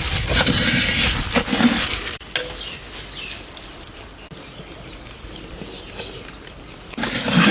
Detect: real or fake real